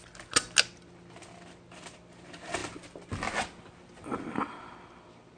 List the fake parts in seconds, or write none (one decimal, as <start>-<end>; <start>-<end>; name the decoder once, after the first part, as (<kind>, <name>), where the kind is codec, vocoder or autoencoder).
none